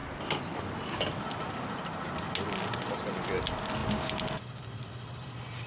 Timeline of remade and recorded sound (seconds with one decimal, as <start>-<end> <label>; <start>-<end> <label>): 0.0-5.7 recorded